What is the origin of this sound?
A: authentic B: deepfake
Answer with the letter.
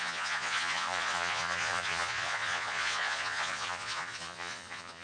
B